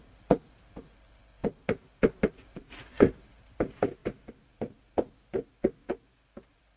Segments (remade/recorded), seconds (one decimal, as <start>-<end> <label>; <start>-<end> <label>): 0.0-1.4 recorded; 1.4-2.0 remade; 2.0-4.0 recorded; 4.0-4.6 remade; 4.6-5.8 recorded; 5.8-6.8 remade